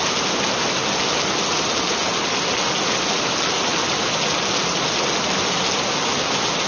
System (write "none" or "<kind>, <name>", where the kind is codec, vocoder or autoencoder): none